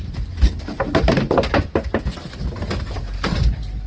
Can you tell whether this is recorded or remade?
recorded